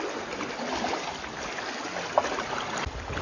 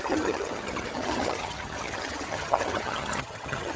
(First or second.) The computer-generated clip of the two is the second